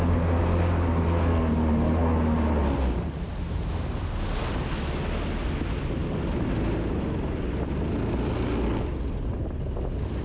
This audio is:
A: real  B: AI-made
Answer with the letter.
A